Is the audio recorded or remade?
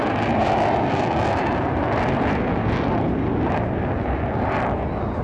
recorded